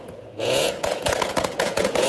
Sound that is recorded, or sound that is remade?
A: remade